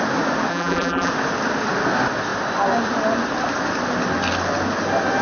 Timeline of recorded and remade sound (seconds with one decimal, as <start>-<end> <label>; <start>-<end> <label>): 0.0-0.5 recorded; 0.5-1.1 remade; 1.1-5.2 recorded